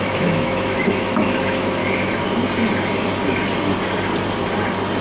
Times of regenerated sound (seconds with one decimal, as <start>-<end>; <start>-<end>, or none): 0.0-1.8